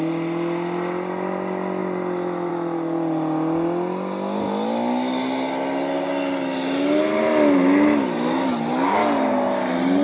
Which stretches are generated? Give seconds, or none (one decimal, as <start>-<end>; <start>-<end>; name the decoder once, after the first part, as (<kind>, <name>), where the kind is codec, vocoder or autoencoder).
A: none